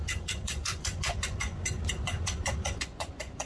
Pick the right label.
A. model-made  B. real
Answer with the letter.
A